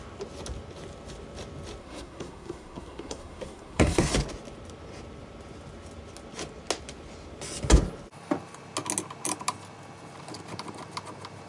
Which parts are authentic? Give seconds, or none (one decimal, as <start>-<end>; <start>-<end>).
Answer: 0.0-1.8; 4.1-11.5